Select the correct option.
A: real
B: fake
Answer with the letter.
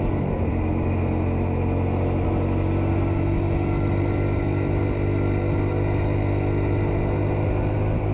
A